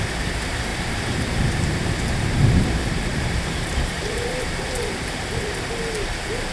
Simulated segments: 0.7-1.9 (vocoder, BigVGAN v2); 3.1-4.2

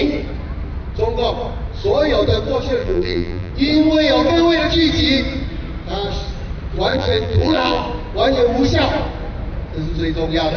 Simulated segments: 2.8-3.5 (vocoder, BigVGAN v2); 6.9-7.8

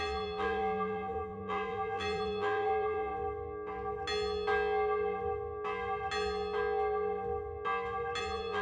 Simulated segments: 0.0-3.1 (vocoder, BigVGAN v2); 8.2-8.6

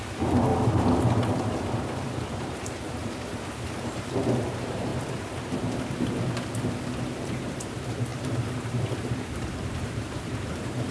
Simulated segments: 0.0-0.5 (vocoder, BigVGAN v2); 1.4-4.9; 7.1-10.9

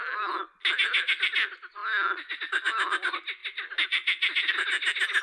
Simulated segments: 1.8-2.4 (vocoder, BigVGAN v2); 3.4-4.5

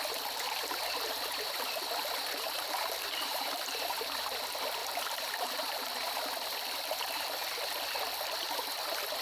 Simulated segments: 2.2-4.2 (vocoder, BigVGAN v2); 4.8-5.9